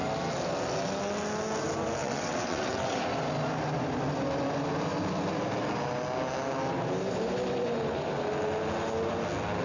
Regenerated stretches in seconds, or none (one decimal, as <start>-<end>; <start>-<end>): 2.0-3.0